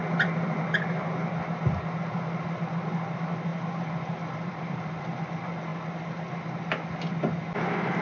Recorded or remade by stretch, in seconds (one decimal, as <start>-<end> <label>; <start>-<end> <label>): 0.0-3.5 recorded; 3.5-5.1 remade; 5.1-8.0 recorded